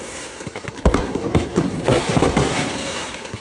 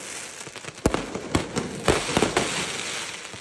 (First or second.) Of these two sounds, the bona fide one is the second